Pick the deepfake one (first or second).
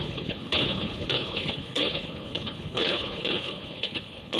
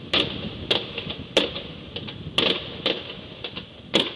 first